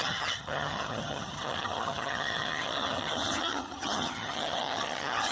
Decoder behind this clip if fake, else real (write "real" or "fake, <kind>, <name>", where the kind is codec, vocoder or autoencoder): fake, vocoder, HiFi-GAN